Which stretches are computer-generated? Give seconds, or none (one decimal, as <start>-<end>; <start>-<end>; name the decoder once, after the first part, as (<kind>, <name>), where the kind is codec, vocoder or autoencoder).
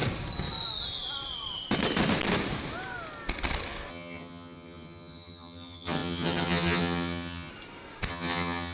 3.9-7.5 (vocoder, HiFi-GAN); 8.1-8.7